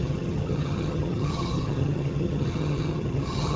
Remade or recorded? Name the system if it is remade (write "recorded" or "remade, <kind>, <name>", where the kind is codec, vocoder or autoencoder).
remade, vocoder, HiFi-GAN